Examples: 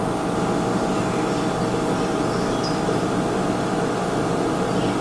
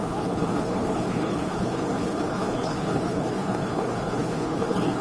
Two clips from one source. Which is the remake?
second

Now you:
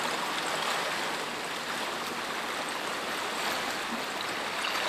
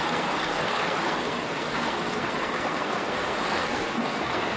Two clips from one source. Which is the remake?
second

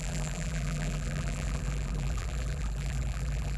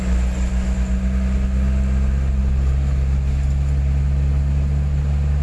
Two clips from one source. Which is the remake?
first